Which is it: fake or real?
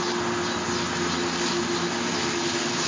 real